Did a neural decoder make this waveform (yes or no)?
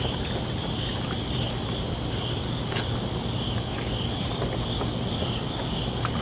no